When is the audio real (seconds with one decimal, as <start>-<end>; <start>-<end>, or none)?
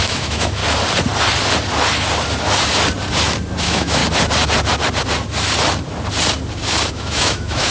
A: 0.6-3.6; 4.0-6.9